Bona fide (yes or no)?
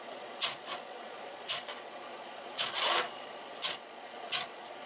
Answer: no